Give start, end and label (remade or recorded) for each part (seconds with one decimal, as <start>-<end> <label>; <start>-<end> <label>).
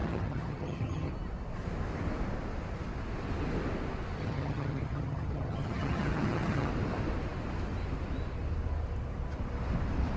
0.0-1.1 remade; 1.1-4.2 recorded; 4.2-6.7 remade; 6.7-10.2 recorded